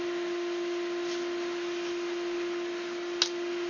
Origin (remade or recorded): recorded